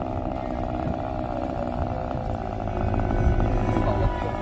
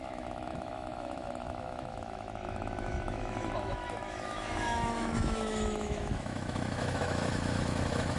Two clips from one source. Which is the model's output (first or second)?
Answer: second